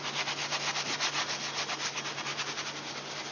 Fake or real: real